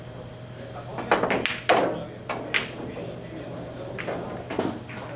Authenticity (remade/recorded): recorded